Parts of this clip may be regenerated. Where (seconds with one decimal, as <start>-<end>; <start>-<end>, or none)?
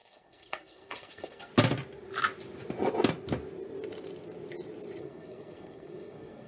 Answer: 0.0-1.5; 5.0-6.5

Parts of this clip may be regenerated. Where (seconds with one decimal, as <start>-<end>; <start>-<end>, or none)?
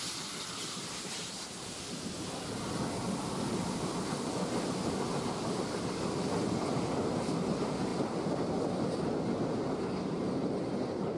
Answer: none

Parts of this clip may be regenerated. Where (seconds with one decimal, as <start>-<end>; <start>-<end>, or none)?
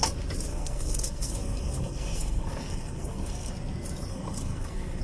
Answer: 0.5-3.5; 4.1-5.0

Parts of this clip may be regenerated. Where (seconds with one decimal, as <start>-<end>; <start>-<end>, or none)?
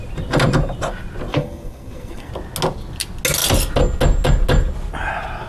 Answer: 1.3-2.3